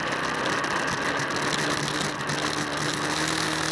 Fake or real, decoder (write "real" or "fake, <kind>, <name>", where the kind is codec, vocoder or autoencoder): real